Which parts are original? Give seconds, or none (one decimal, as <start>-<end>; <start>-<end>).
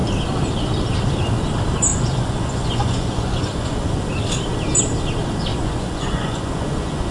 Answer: 0.0-1.9; 4.1-5.5